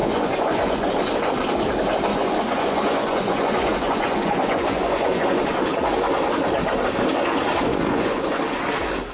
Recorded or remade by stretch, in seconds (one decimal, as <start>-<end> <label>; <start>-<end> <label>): 0.0-0.9 remade; 0.9-2.1 recorded; 2.1-5.4 remade; 5.4-7.7 recorded; 7.7-8.4 remade; 8.4-9.1 recorded

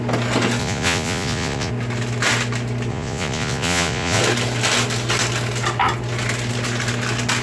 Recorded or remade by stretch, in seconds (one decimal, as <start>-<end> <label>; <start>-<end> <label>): 0.0-0.6 recorded; 0.6-1.7 remade; 1.7-2.9 recorded; 2.9-4.2 remade; 4.2-7.4 recorded

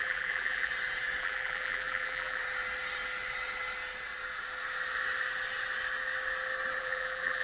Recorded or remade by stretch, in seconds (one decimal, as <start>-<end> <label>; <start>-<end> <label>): 0.0-0.7 remade; 0.7-1.2 recorded; 1.2-2.4 remade; 2.4-6.8 recorded; 6.8-7.4 remade

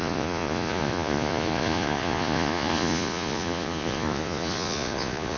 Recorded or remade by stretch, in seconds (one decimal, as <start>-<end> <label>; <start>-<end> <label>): 0.0-5.4 remade

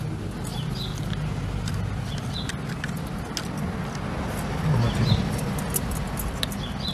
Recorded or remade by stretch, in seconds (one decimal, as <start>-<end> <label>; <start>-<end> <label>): 0.0-6.9 recorded

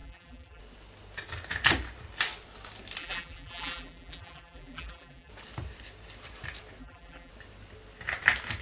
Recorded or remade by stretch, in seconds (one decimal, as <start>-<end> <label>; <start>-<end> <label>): 0.0-0.6 remade; 0.6-3.0 recorded; 3.0-5.3 remade; 5.3-6.8 recorded; 6.8-7.3 remade; 7.3-8.6 recorded